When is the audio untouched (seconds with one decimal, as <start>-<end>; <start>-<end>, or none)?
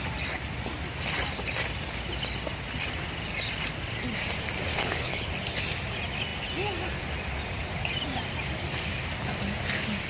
0.0-4.7; 5.3-10.1